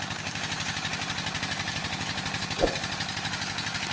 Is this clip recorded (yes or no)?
yes